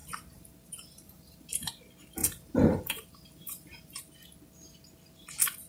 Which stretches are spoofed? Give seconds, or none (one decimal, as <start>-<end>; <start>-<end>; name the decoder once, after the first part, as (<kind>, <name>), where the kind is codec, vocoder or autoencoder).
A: 0.0-1.7 (vocoder, BigVGAN v2); 2.2-4.0